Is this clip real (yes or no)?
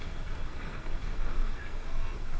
no